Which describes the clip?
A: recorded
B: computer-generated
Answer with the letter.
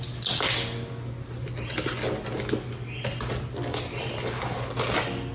A